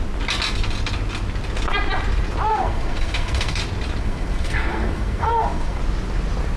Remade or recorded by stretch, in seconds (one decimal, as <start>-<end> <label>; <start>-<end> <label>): 0.0-2.5 recorded; 2.5-3.6 remade; 3.6-4.0 recorded; 4.0-5.8 remade; 5.8-6.6 recorded